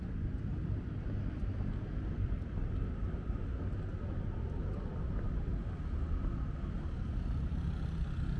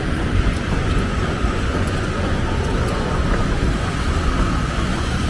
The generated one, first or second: second